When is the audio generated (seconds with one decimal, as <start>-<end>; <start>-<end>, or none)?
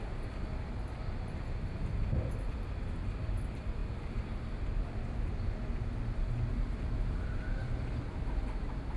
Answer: none